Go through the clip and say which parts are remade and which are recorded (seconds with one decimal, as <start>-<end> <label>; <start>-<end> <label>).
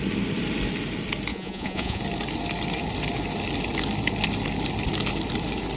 0.0-1.3 recorded; 1.3-2.0 remade; 2.0-5.8 recorded